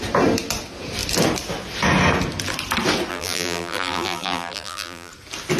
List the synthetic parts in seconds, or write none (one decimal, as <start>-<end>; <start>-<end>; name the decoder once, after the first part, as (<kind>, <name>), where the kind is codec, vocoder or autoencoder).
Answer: 3.1-5.1 (vocoder, BigVGAN v2)